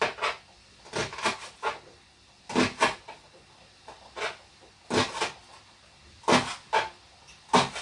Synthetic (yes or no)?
no